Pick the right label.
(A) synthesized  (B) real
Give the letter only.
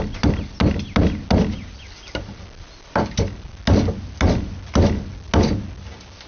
B